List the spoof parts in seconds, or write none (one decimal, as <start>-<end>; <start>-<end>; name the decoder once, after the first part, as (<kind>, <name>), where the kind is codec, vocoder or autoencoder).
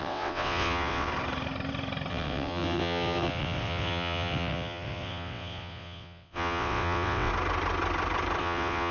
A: 0.0-1.1 (vocoder, WaveNeXt); 2.1-7.3; 8.4-8.9